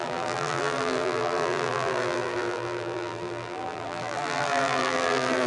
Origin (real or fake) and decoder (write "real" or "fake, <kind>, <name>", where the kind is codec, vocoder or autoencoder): fake, vocoder, BigVGAN v2